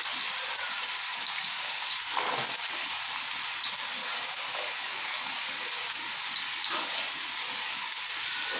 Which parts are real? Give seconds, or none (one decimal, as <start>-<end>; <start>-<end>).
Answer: 0.0-1.1; 2.0-4.0; 7.0-7.4; 8.0-8.6